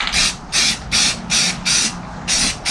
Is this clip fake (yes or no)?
no